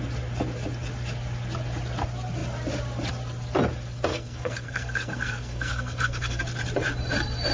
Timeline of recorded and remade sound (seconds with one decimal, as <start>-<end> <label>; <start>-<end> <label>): 0.0-4.1 recorded; 4.1-6.4 remade; 6.4-7.5 recorded